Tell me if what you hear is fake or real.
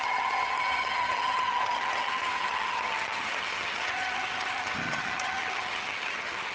fake